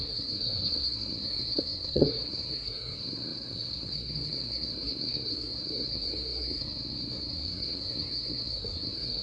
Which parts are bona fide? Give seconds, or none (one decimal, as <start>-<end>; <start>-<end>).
none